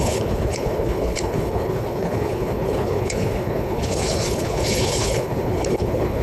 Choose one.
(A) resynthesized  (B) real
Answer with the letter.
A